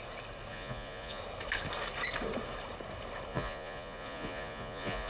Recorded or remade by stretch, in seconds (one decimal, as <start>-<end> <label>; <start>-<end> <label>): 0.0-0.5 recorded; 0.5-1.2 remade; 1.2-3.3 recorded; 3.3-5.1 remade

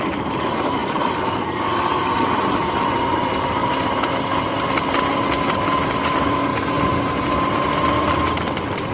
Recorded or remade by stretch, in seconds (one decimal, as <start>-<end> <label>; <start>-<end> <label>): 0.0-8.9 recorded

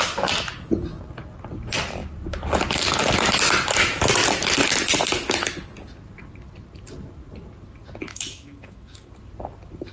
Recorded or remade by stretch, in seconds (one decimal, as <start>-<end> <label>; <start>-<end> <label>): 0.0-8.1 recorded; 8.1-9.1 remade; 9.1-9.9 recorded

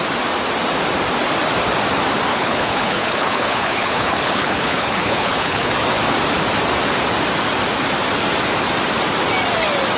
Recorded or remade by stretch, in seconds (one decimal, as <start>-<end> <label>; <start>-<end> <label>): 0.0-2.3 recorded; 2.3-5.7 remade; 5.7-10.0 recorded

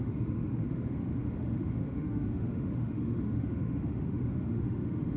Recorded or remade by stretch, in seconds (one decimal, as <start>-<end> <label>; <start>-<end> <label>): 0.0-5.2 remade

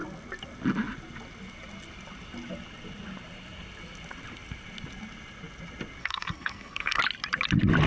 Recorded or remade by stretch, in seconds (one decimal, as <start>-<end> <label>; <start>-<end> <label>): 0.0-6.0 recorded; 6.0-7.0 remade; 7.0-7.9 recorded

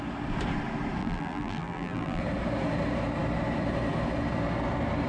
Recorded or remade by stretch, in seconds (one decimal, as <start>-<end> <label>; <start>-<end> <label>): 0.0-1.0 recorded; 1.0-2.2 remade; 2.2-5.1 recorded